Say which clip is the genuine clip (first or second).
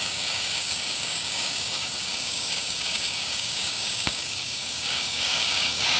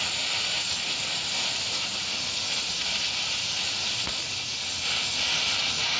second